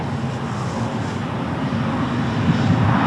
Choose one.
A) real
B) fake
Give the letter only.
A